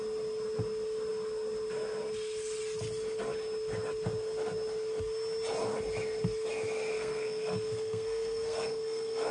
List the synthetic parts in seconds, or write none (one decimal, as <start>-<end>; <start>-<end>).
6.9-9.3